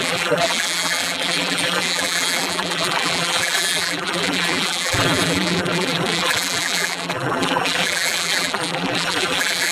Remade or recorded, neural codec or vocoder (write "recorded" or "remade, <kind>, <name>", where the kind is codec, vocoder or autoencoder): remade, vocoder, BigVGAN v2